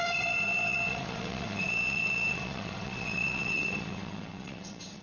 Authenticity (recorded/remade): remade